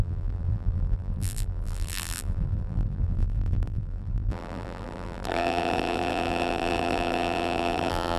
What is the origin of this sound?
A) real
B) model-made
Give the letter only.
B